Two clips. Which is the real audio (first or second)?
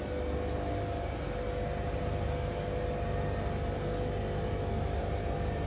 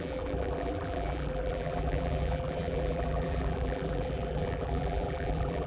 first